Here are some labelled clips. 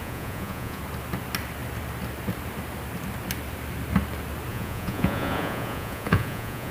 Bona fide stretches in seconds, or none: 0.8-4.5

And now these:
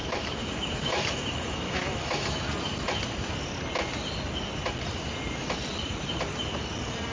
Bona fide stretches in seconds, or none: 2.5-7.1

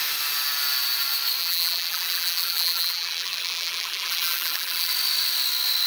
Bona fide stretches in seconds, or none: 0.0-1.4; 4.9-5.9

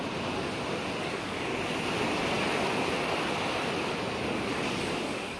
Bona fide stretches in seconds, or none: 0.0-1.0; 1.5-4.7

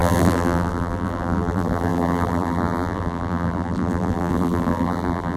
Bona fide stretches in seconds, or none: none

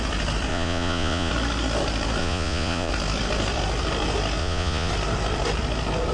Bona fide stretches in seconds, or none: 0.0-0.5; 1.3-2.2; 2.9-4.4; 4.9-6.1

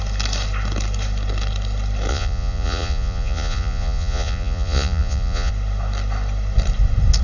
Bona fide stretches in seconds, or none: 0.0-2.1; 5.5-7.2

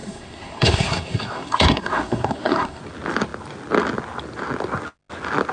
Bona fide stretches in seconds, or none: 2.8-5.5